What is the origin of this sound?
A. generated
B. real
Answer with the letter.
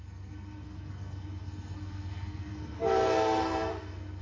A